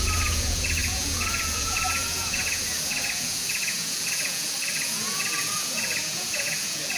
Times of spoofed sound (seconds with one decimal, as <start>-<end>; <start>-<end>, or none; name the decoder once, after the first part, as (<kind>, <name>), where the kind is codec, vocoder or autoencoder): 0.0-7.0 (vocoder, Vocos)